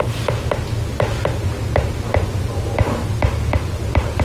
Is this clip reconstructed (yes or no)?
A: no